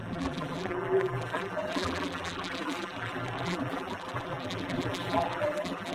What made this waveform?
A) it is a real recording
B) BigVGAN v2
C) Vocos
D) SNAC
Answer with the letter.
B